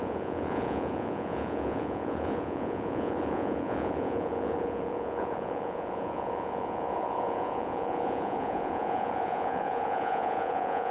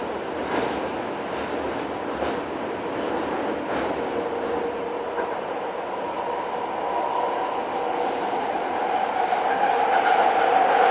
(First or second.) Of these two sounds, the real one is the second